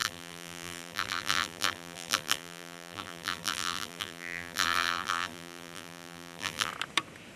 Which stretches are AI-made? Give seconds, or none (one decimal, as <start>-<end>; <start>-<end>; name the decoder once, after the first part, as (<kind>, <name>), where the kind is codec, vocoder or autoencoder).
0.0-6.7 (vocoder, BigVGAN v2)